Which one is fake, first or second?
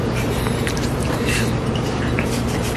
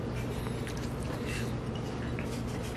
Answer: first